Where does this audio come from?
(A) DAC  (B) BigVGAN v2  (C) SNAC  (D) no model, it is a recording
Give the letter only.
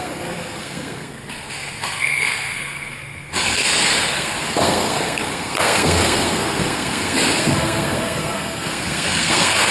C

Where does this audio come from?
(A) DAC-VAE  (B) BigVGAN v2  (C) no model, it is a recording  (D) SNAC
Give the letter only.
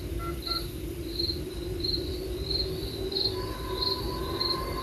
C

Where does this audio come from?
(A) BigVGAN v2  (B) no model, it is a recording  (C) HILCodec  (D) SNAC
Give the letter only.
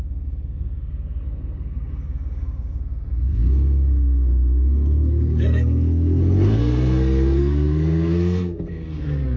D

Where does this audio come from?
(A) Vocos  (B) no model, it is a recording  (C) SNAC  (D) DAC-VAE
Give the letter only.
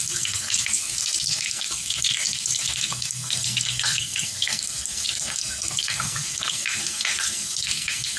C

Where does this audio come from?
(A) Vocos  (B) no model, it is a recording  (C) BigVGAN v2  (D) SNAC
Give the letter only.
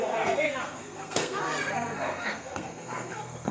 D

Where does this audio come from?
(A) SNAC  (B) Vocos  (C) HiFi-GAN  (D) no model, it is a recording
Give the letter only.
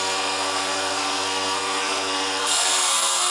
A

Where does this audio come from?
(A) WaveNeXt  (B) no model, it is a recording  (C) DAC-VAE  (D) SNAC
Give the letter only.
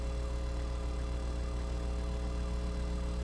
B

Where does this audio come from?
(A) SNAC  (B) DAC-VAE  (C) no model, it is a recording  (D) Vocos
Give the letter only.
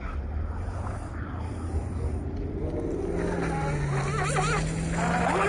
C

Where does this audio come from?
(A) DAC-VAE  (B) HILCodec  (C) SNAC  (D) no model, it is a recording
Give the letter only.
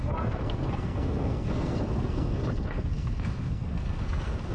C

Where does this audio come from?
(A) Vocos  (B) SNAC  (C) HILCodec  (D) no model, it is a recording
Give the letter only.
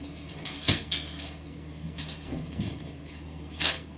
B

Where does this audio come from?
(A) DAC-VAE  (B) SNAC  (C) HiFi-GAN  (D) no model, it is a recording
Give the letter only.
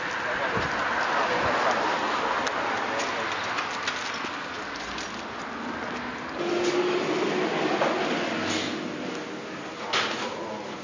D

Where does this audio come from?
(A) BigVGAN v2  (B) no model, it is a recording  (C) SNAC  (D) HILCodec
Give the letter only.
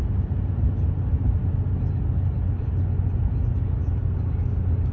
B